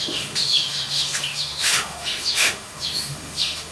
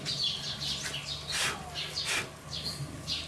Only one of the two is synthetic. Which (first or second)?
first